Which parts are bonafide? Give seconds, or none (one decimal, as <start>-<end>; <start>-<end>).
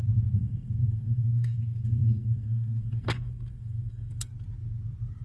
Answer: 4.3-5.2